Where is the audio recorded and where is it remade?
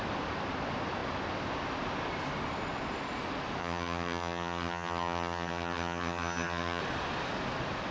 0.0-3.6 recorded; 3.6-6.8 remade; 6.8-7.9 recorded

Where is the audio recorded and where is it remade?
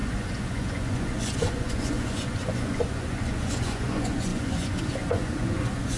0.0-6.0 remade